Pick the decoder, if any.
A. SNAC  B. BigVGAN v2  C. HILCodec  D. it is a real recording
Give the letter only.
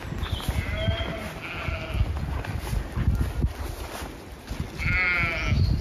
D